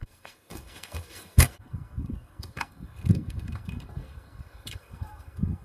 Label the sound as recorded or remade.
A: remade